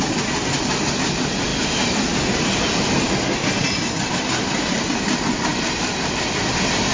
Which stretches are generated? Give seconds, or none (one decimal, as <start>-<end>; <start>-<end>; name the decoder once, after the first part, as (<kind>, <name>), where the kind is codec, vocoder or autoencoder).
none